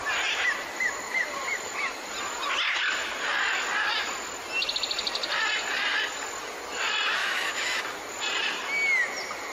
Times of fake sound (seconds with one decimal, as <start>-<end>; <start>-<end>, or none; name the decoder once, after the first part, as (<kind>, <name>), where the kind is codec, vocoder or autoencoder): 7.2-7.8 (autoencoder, DAC-VAE)